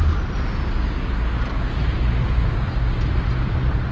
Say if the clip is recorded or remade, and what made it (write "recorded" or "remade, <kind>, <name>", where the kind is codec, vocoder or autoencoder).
recorded